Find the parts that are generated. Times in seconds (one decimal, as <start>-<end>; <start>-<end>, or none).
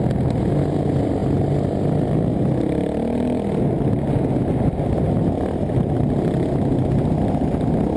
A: none